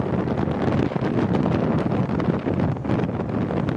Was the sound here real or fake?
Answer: real